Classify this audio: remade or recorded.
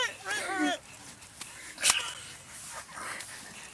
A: recorded